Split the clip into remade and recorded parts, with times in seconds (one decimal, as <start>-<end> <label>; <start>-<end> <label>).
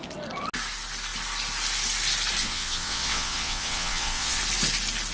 0.0-2.4 recorded; 2.4-4.4 remade; 4.4-5.1 recorded